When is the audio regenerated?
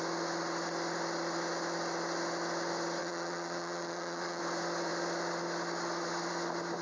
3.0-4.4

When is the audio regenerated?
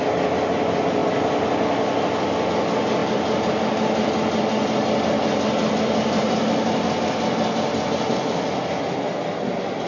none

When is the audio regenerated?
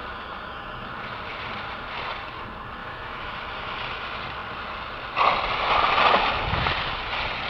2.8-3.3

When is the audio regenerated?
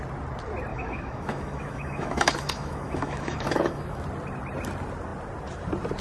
0.7-4.0